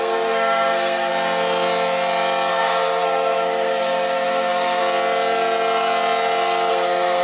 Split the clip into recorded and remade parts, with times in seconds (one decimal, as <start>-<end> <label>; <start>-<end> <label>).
0.0-1.1 remade; 1.1-2.5 recorded; 2.5-4.8 remade; 4.8-6.7 recorded; 6.7-7.2 remade